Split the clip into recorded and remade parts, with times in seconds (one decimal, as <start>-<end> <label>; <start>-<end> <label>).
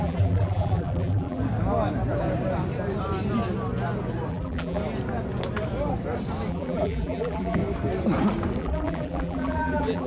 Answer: 0.0-1.4 remade; 1.4-4.3 recorded; 4.3-4.8 remade; 4.8-6.5 recorded; 6.5-7.6 remade; 7.6-8.6 recorded; 8.6-10.1 remade